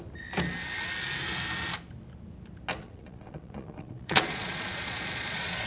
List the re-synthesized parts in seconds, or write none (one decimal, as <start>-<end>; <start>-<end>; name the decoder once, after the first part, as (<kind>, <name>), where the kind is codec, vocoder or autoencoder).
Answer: 2.8-5.7 (vocoder, Vocos)